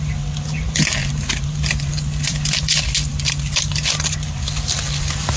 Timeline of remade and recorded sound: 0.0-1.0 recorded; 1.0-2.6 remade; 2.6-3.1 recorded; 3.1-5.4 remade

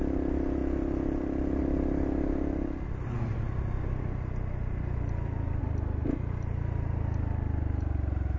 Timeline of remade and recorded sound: 0.0-8.4 recorded

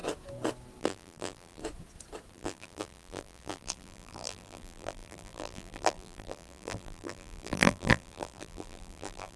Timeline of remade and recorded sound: 0.0-0.8 recorded; 0.8-1.6 remade; 1.6-2.3 recorded; 2.3-9.4 remade

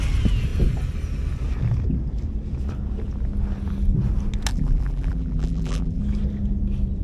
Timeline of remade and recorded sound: 0.0-4.5 recorded; 4.5-6.0 remade; 6.0-7.0 recorded

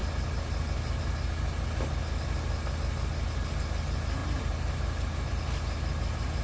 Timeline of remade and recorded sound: 0.0-4.2 recorded; 4.2-5.3 remade; 5.3-6.4 recorded

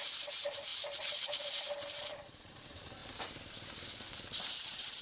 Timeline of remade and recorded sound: 0.0-0.7 remade; 0.7-1.4 recorded; 1.4-3.0 remade; 3.0-4.4 recorded; 4.4-5.0 remade